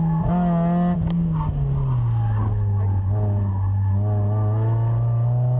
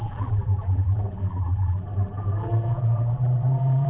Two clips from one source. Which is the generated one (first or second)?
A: second